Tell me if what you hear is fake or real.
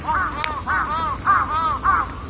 real